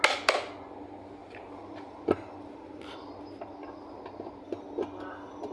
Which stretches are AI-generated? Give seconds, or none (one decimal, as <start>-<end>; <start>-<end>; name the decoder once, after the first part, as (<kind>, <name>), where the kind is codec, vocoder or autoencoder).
1.2-2.8 (vocoder, BigVGAN v2)